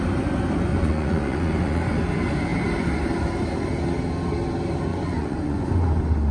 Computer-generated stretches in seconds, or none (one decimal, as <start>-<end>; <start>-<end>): 0.7-2.0; 4.9-5.7